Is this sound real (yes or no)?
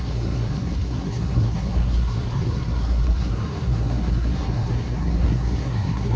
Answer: no